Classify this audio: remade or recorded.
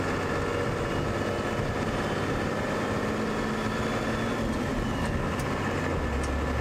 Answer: recorded